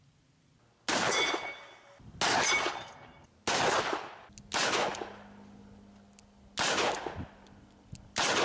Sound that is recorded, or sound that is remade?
recorded